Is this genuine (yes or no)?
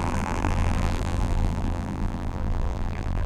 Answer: no